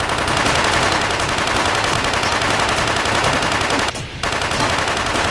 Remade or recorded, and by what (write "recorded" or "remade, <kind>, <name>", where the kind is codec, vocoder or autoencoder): recorded